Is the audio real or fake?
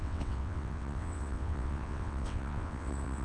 fake